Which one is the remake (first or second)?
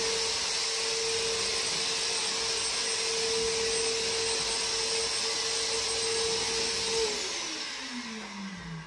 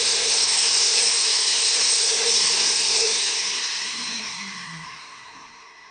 second